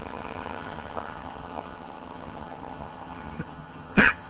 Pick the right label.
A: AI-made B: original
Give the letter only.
A